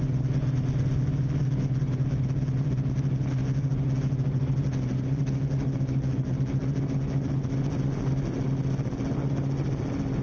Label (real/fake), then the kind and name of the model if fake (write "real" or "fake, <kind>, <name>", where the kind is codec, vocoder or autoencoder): real